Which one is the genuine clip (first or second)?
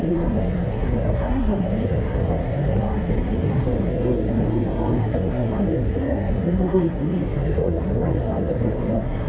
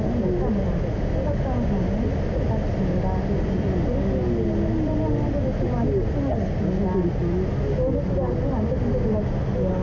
second